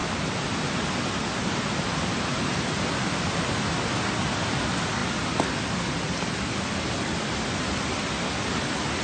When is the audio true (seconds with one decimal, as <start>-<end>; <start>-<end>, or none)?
0.0-9.0